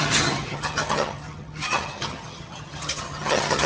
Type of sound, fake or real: fake